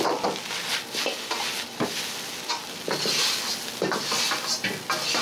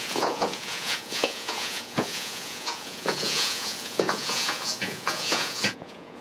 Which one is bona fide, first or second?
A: first